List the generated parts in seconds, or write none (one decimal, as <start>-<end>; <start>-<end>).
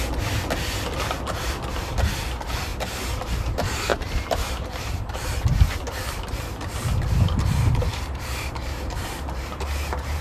3.9-5.0; 7.9-10.2